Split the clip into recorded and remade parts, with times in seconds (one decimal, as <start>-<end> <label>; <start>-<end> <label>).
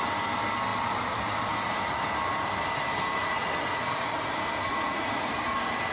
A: 0.0-3.2 recorded; 3.2-4.1 remade; 4.1-4.7 recorded; 4.7-5.4 remade; 5.4-5.9 recorded